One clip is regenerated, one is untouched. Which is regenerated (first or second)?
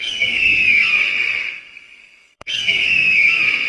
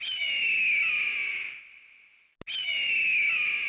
first